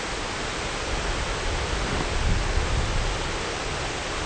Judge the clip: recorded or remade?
recorded